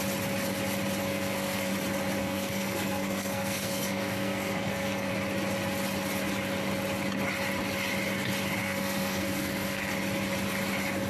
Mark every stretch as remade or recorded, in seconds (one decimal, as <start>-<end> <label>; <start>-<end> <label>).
0.0-1.0 recorded; 1.0-1.7 remade; 1.7-2.2 recorded; 2.2-5.1 remade; 5.1-8.6 recorded; 8.6-9.9 remade; 9.9-11.1 recorded